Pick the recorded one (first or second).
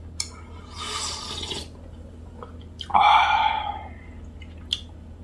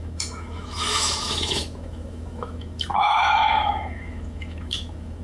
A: first